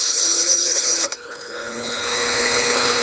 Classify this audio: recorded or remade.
remade